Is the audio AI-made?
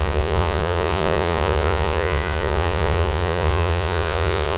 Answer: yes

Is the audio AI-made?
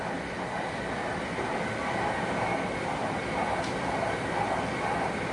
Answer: no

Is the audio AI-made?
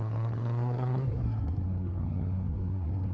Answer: yes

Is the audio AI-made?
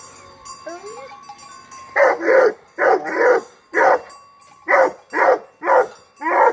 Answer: no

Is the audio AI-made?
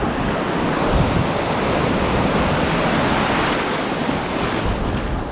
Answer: no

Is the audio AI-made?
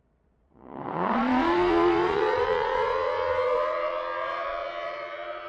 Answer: yes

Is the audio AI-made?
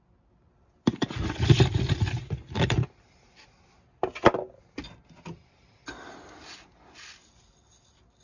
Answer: no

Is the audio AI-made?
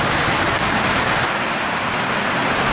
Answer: no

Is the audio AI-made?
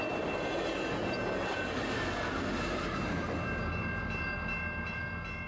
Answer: no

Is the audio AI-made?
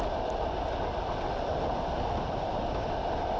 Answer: no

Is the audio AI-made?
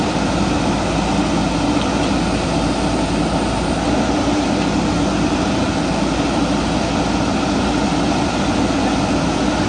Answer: no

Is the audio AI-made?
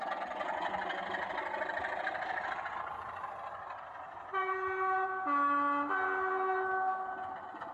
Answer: no